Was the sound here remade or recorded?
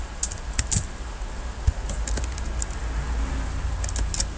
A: recorded